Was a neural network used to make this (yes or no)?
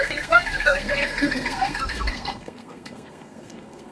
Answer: yes